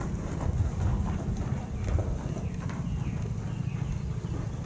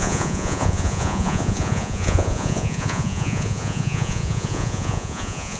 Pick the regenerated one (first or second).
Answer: second